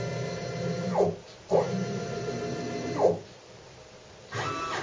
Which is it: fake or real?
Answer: real